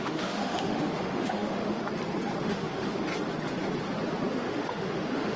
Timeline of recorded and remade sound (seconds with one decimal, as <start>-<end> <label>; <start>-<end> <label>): 0.0-1.8 remade; 1.8-2.4 recorded; 2.4-3.1 remade; 3.1-4.3 recorded; 4.3-5.4 remade